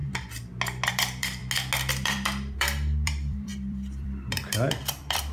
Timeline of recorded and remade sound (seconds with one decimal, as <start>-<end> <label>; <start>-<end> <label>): 0.0-0.9 recorded; 0.9-1.4 remade; 1.4-1.9 recorded; 1.9-5.3 remade